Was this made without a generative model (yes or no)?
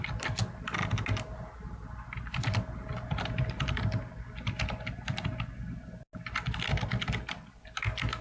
yes